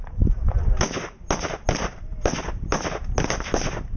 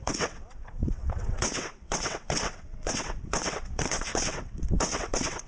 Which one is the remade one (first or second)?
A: second